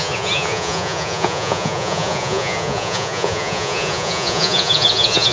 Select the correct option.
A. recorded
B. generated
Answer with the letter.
B